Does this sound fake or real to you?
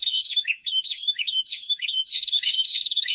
fake